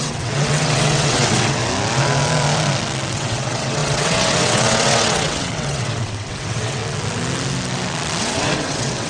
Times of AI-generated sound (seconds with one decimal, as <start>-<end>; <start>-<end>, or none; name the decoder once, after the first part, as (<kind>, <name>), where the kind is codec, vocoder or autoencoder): 0.0-1.6 (vocoder, WaveNeXt); 3.1-6.8; 8.2-9.1